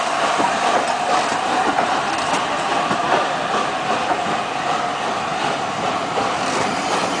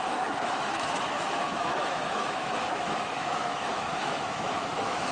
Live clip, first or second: first